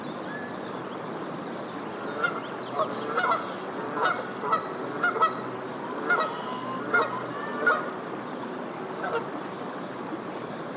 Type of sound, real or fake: real